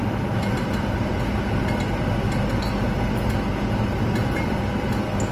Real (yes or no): yes